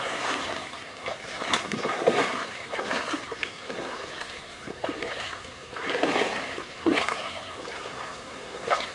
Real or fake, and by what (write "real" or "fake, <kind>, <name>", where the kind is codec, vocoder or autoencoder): fake, codec, SNAC